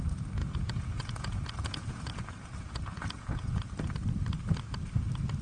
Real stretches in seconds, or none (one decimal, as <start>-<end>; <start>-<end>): 0.0-0.4; 3.6-5.4

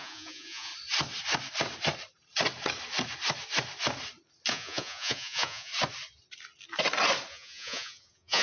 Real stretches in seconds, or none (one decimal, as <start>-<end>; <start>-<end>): 0.7-4.5; 5.7-7.3